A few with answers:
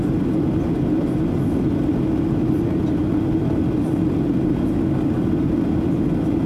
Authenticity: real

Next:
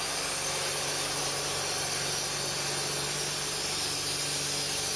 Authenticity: real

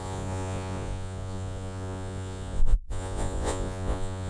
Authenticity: fake